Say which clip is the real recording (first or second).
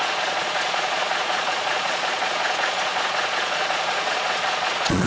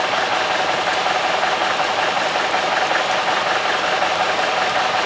second